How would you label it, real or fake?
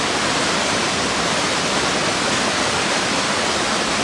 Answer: real